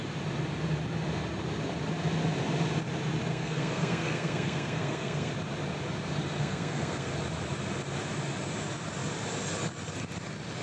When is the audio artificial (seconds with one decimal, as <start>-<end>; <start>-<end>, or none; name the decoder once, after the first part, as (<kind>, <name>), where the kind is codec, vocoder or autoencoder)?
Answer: 3.3-5.3 (codec, SNAC); 6.4-7.1